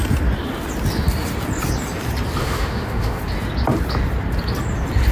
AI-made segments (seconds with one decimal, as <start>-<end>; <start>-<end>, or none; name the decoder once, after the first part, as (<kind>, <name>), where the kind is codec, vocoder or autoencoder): 2.4-3.2 (autoencoder, DAC-VAE)